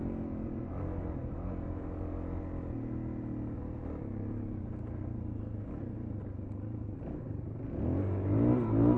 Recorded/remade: recorded